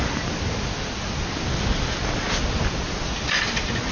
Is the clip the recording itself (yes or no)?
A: yes